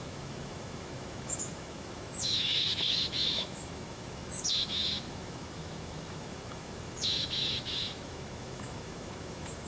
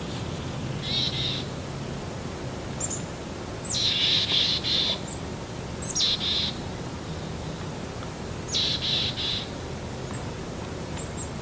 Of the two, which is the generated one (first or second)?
first